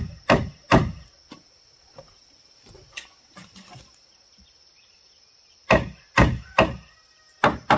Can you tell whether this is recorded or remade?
recorded